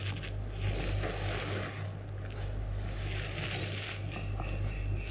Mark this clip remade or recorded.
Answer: recorded